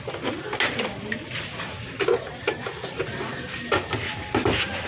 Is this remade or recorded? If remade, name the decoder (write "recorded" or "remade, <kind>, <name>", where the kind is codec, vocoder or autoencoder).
recorded